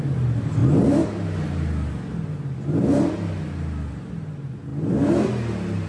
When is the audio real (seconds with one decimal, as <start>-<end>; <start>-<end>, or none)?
0.0-5.9